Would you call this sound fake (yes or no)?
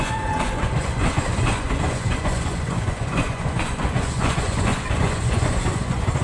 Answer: yes